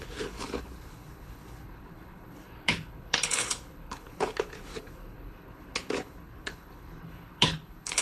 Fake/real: fake